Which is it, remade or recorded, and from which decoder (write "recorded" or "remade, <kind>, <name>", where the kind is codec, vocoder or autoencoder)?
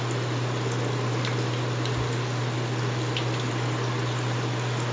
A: recorded